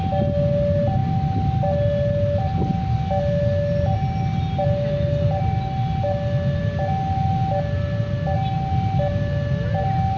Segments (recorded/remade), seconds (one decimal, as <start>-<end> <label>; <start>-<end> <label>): 0.0-10.2 recorded